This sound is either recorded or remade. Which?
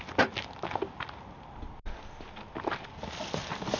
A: recorded